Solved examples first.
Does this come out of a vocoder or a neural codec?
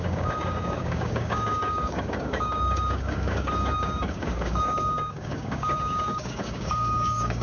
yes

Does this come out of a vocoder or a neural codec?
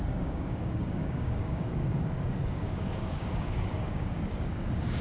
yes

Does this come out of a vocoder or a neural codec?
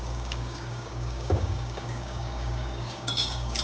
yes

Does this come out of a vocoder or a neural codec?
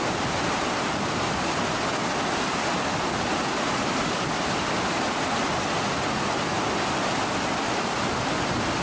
no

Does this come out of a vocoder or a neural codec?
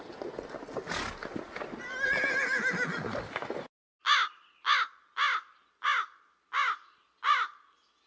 no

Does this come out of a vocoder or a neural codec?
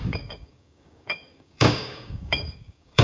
yes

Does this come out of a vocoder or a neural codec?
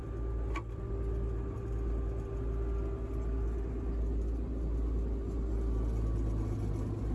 no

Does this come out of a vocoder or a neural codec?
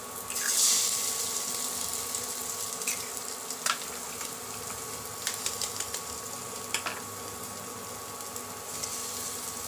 no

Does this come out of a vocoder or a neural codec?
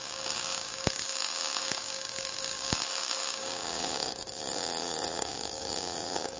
yes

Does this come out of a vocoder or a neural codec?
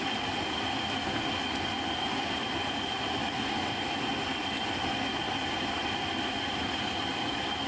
no